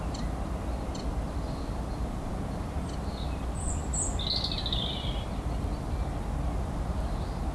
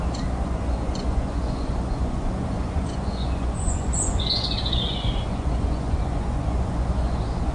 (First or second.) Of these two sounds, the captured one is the first